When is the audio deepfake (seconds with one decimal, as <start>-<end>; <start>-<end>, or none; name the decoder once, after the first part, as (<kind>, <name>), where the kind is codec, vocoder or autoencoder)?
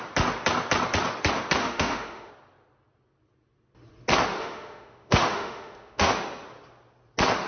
1.6-2.3 (autoencoder, DAC-VAE); 4.4-6.1